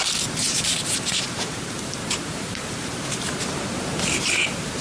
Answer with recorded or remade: remade